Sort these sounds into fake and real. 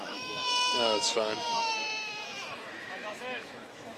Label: fake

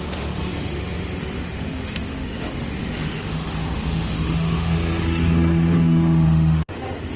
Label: fake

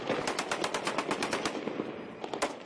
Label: real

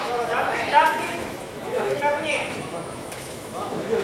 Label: fake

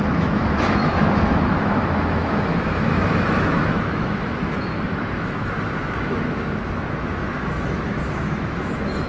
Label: fake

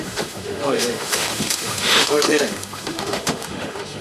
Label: fake